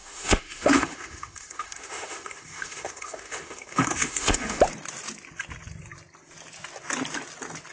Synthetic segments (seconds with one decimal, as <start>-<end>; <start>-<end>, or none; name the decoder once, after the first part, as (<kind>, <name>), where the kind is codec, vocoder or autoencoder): 0.0-4.6 (autoencoder, DAC-VAE)